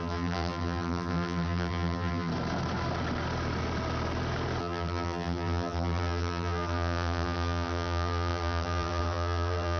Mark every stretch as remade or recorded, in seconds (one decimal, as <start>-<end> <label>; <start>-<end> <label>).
0.0-2.3 remade; 2.3-4.6 recorded; 4.6-9.8 remade